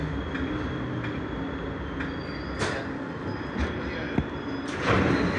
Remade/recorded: recorded